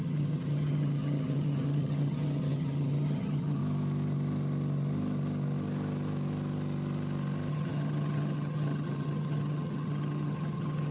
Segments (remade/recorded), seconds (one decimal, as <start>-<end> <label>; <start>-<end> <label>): 0.0-3.6 remade; 3.6-7.5 recorded; 7.5-10.9 remade